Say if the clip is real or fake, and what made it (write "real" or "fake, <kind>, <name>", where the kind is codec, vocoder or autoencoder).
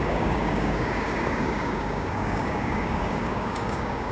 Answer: fake, codec, DAC